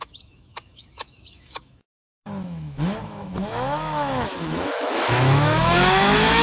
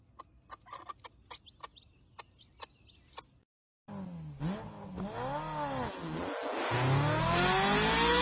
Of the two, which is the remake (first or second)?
first